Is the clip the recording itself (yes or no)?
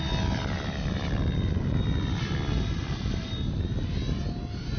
yes